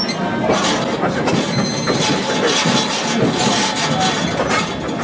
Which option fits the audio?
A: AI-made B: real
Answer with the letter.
B